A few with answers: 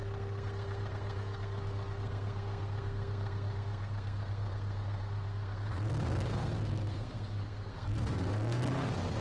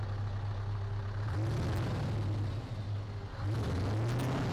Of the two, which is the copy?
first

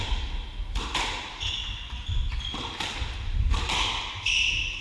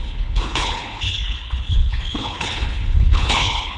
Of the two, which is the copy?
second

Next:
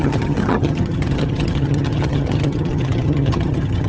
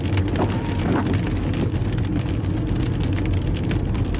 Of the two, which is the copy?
first